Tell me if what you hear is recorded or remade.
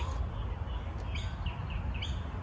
recorded